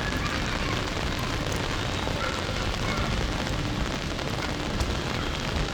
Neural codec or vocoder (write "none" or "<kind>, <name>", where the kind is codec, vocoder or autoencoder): none